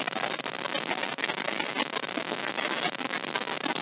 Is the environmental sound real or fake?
real